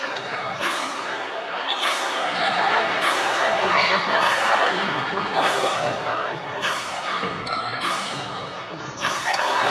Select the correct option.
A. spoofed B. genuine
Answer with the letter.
A